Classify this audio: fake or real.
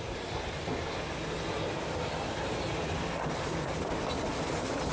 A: real